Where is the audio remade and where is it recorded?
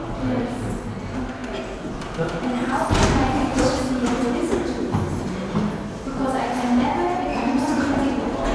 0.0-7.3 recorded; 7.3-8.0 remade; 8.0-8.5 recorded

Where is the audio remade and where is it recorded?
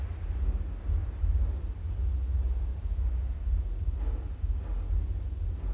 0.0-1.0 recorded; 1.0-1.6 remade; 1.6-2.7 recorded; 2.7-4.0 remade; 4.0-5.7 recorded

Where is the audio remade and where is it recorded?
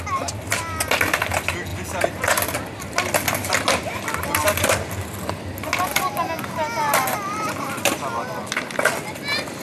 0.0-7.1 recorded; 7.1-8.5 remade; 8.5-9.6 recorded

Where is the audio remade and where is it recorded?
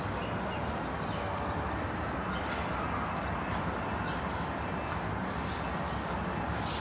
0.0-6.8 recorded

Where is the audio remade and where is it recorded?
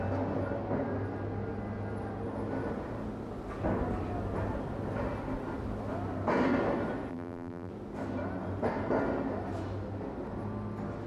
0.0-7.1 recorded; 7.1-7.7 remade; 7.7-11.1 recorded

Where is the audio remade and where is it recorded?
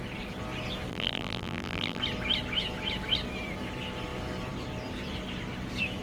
0.0-0.9 recorded; 0.9-2.0 remade; 2.0-6.0 recorded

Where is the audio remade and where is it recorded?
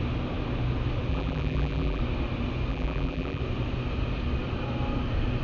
0.0-1.1 recorded; 1.1-2.0 remade; 2.0-2.7 recorded; 2.7-3.4 remade; 3.4-5.4 recorded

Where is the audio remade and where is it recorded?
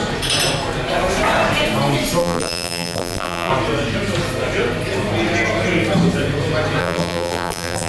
0.0-2.2 recorded; 2.2-3.5 remade; 3.5-6.8 recorded; 6.8-7.9 remade